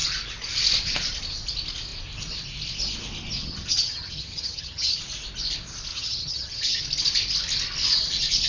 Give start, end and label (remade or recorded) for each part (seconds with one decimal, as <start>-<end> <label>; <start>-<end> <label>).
0.0-3.4 recorded; 3.4-5.0 remade; 5.0-5.9 recorded; 5.9-6.8 remade; 6.8-8.5 recorded